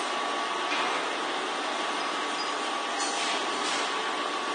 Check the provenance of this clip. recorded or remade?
recorded